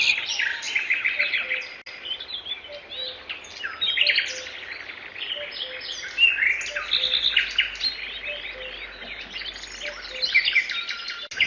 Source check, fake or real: real